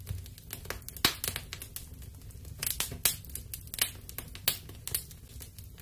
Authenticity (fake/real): real